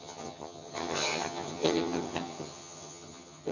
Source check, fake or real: fake